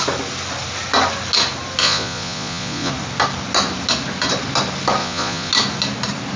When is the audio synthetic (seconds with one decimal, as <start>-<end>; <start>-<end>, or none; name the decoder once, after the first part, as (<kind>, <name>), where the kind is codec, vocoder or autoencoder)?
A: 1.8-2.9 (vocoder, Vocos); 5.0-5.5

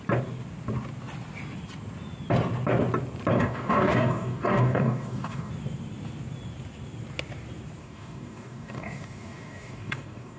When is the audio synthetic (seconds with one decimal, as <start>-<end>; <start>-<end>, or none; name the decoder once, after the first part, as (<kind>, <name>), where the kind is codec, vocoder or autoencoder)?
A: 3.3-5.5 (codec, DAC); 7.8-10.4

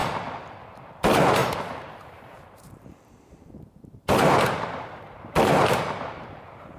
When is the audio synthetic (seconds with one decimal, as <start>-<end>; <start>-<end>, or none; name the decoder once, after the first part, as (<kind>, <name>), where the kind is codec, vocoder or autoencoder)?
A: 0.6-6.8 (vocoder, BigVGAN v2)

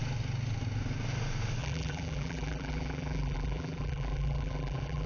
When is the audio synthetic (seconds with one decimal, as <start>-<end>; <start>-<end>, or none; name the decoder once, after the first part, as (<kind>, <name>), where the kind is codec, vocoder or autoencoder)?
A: 1.6-5.1 (vocoder, BigVGAN v2)

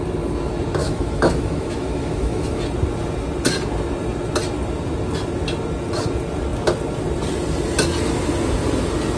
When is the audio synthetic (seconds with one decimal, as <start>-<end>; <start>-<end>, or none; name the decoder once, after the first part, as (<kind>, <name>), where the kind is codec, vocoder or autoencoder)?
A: 0.8-2.6 (autoencoder, DAC-VAE)

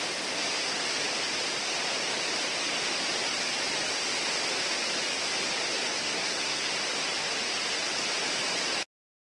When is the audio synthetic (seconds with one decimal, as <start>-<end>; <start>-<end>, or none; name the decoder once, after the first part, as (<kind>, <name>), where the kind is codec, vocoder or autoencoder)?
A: 6.0-6.7 (codec, SNAC)

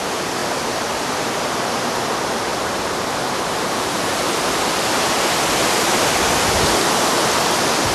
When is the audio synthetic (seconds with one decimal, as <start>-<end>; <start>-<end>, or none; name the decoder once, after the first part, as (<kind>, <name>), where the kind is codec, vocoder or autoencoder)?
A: 2.5-4.1 (vocoder, BigVGAN v2)

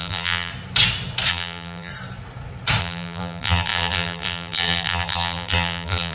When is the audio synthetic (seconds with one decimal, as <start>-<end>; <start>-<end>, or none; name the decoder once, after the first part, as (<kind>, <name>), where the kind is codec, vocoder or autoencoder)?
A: 0.0-0.5 (vocoder, BigVGAN v2); 1.3-1.9; 2.8-6.1